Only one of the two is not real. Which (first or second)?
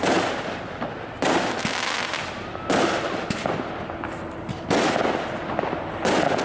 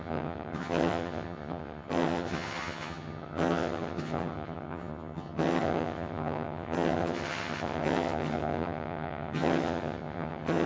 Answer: second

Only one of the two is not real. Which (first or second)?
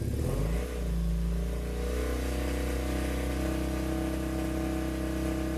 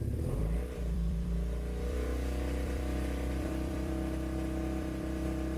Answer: second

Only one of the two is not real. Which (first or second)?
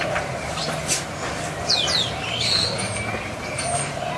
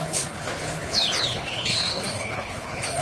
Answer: second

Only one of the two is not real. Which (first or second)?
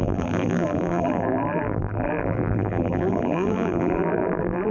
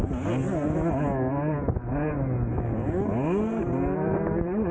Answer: first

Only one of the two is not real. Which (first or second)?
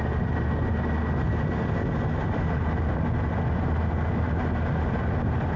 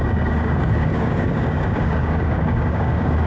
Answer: second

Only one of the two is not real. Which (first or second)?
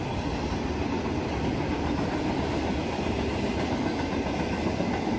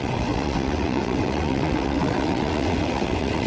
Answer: second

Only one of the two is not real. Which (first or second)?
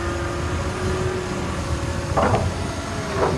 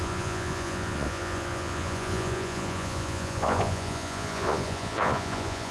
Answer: second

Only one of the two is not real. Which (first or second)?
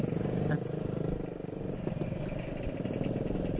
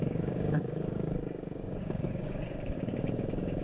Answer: second